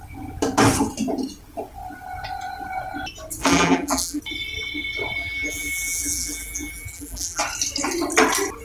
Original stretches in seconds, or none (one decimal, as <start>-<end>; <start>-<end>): 0.0-3.4; 4.2-5.2; 7.4-8.6